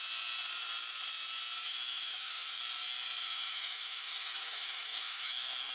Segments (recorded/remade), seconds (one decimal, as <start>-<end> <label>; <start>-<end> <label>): 0.0-1.7 recorded; 1.7-2.6 remade; 2.6-3.2 recorded; 3.2-5.7 remade